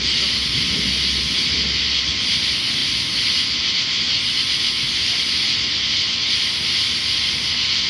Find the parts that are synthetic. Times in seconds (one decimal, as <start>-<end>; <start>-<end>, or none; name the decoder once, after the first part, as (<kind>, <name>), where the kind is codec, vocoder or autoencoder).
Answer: none